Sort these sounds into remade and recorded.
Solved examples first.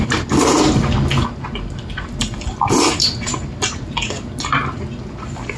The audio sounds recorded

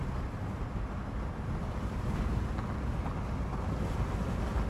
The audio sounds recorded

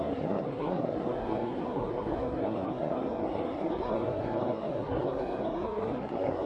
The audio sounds remade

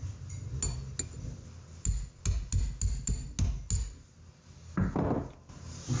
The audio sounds recorded